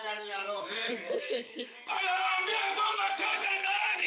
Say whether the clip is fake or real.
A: fake